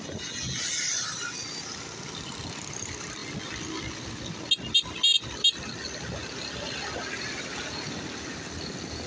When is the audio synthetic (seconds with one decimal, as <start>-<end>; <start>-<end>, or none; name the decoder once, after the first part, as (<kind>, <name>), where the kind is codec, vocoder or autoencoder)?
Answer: none